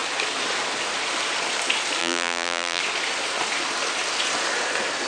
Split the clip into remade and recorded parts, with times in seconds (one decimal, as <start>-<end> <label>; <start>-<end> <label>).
0.0-2.0 recorded; 2.0-2.8 remade; 2.8-5.1 recorded